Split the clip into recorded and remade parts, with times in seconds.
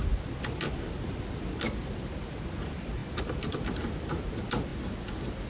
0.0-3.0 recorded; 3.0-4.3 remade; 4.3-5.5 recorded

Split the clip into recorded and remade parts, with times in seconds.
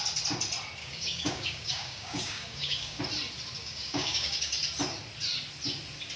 0.0-0.8 recorded; 0.8-3.0 remade; 3.0-3.6 recorded; 3.6-4.5 remade; 4.5-6.2 recorded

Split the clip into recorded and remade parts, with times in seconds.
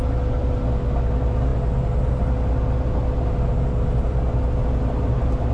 0.0-5.5 recorded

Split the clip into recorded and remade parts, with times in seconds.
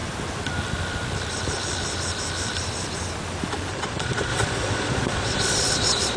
0.0-3.7 recorded; 3.7-6.2 remade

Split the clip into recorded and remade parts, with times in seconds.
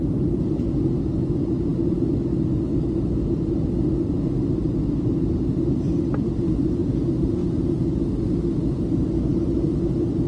0.0-10.3 recorded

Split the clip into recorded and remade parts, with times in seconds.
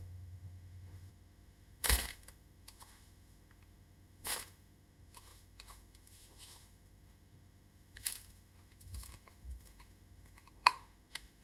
0.0-11.4 remade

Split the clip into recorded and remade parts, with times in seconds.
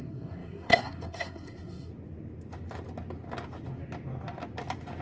0.0-1.9 remade; 1.9-5.0 recorded